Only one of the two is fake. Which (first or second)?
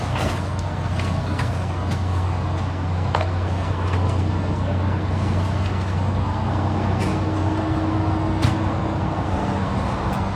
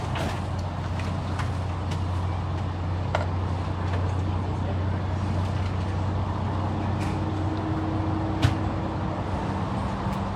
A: first